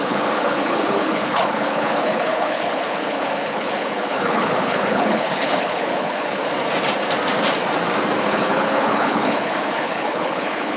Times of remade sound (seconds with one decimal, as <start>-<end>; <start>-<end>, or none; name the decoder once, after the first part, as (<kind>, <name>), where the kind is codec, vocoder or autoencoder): 0.0-6.4 (codec, HILCodec); 8.2-10.8